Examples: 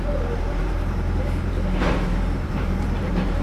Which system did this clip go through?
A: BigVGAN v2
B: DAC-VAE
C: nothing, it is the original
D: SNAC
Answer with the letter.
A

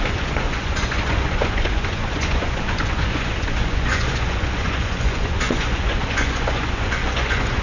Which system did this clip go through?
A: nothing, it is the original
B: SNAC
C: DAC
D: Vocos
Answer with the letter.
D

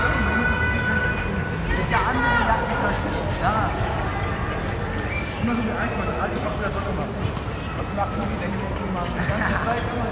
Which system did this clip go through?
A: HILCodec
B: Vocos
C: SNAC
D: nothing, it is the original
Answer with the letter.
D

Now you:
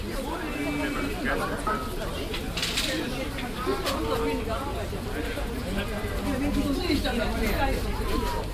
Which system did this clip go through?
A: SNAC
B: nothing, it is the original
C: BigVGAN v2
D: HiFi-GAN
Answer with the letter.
B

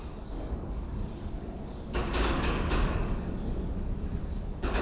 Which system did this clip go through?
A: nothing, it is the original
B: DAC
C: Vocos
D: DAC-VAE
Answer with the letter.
B